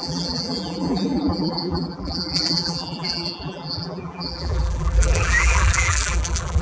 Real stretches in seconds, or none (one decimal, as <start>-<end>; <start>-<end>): none